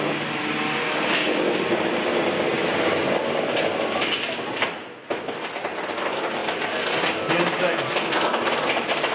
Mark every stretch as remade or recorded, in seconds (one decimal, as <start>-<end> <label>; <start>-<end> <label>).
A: 0.0-9.1 recorded